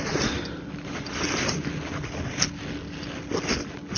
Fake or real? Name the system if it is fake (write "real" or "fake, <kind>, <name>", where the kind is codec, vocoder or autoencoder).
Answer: real